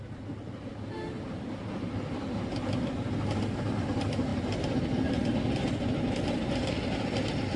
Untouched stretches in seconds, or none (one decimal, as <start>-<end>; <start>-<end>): 0.0-7.6